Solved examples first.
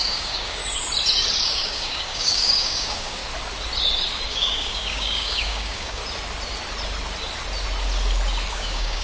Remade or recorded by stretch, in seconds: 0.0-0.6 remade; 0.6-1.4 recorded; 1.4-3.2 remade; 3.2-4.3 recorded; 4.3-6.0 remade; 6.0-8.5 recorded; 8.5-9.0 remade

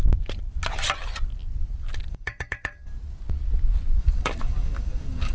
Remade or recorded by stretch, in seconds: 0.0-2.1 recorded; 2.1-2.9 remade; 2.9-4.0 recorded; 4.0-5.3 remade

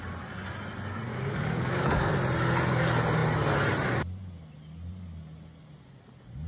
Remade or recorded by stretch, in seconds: 0.0-1.1 recorded; 1.1-2.1 remade; 2.1-6.5 recorded